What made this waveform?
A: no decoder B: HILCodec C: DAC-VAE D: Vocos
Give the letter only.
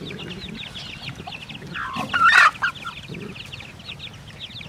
A